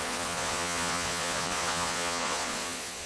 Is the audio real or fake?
fake